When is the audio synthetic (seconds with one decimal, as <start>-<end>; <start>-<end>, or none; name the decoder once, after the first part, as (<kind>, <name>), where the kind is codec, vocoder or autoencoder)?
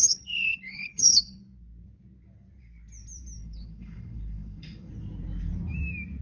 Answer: 0.0-1.4 (codec, HILCodec); 3.4-4.9